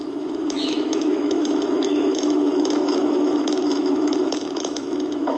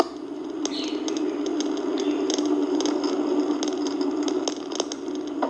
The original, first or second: second